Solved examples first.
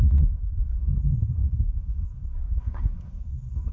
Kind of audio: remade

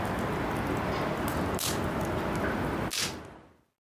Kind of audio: recorded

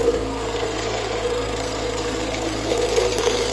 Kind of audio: remade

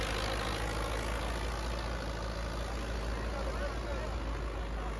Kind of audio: recorded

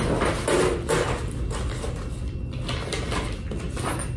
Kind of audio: recorded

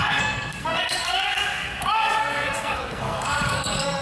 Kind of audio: remade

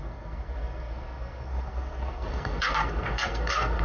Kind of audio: remade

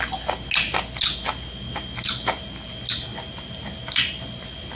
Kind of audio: recorded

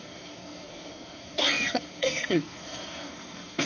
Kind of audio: remade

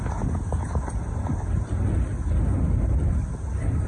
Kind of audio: recorded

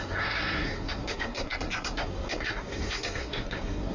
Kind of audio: remade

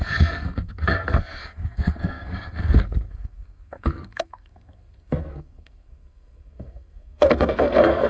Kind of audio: remade